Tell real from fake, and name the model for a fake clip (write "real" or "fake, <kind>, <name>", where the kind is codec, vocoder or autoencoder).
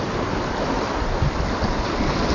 real